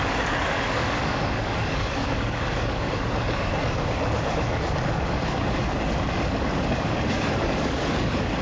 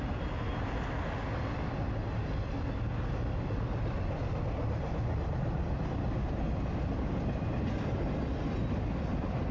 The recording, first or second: second